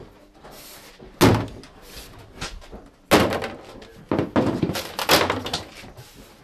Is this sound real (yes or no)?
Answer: yes